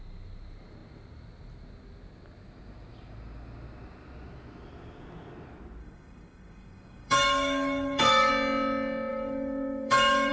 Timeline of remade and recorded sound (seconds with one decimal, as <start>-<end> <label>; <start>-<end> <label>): 0.0-5.8 recorded; 5.8-8.3 remade; 8.3-9.1 recorded; 9.1-10.3 remade